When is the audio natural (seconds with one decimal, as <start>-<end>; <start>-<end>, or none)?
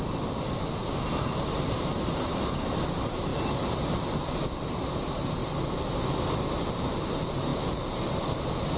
5.4-6.7